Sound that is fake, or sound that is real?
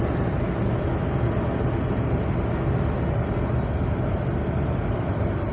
real